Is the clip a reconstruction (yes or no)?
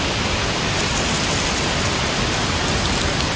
yes